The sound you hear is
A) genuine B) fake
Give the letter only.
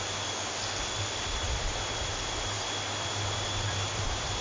A